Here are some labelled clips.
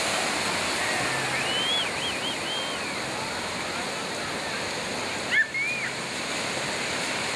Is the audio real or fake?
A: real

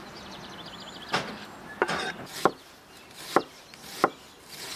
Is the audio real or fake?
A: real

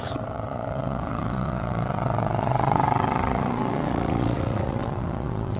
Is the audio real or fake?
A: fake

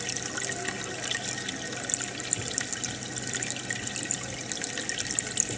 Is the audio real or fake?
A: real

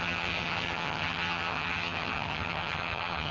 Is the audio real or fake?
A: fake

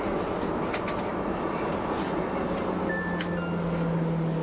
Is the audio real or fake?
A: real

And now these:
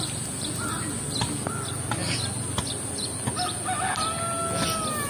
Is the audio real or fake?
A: real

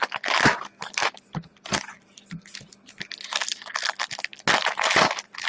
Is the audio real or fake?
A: real